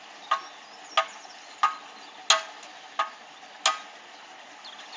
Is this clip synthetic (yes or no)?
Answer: no